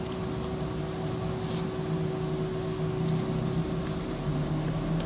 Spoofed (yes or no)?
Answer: no